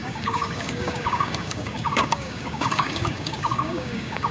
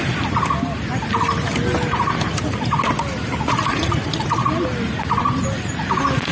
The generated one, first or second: first